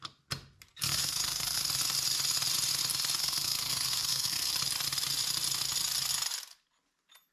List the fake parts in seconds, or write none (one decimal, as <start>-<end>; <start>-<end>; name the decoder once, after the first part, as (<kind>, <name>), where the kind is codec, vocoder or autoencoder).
0.7-1.6 (codec, SNAC); 3.2-4.5